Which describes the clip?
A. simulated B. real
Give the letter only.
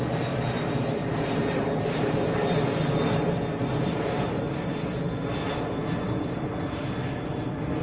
B